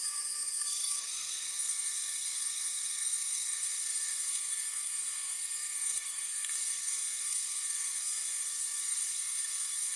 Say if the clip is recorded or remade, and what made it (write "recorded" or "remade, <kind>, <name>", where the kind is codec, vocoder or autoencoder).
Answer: remade, codec, SNAC